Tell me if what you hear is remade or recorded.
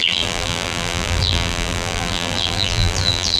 remade